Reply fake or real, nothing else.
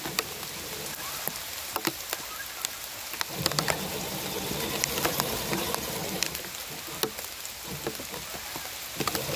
real